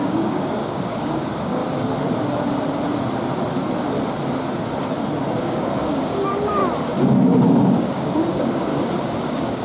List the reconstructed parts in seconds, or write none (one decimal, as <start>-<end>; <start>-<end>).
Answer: 0.0-1.6; 5.4-6.6; 7.2-8.7; 9.2-9.6

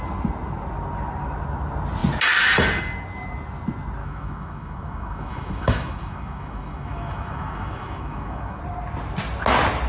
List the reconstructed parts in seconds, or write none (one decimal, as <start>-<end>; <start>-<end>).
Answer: 4.0-8.6

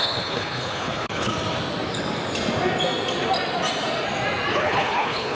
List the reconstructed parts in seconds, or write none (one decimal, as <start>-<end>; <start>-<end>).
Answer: 0.0-1.3; 4.5-5.3

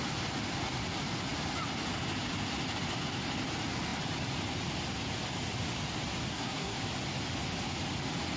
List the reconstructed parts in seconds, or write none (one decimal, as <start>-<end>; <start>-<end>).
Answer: 6.3-6.8

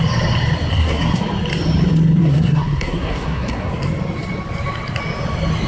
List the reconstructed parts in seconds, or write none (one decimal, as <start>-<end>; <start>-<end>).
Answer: 0.7-1.2; 2.2-3.7

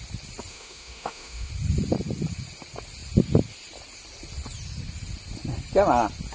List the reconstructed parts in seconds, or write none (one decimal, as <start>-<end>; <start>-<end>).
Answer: 0.5-1.5

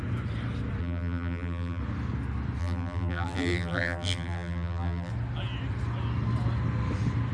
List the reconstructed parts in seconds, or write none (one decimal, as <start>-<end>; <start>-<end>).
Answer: 0.8-1.8; 2.6-5.1

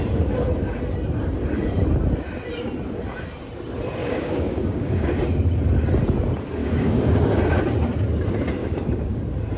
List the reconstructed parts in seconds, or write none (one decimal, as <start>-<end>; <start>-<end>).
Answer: 4.0-5.2; 6.6-7.4; 8.6-9.2